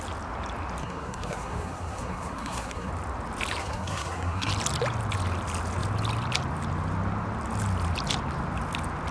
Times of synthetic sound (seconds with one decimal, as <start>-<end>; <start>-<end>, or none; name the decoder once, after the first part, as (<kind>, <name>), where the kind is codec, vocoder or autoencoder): 0.8-2.9 (codec, SNAC); 3.6-4.5